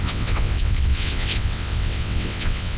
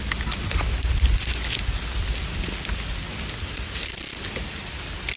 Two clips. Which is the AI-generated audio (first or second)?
first